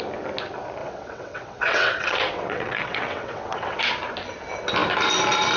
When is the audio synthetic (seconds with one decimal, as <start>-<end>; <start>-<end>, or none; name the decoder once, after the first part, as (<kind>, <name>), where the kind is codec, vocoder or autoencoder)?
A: 0.8-3.8 (vocoder, WaveNeXt)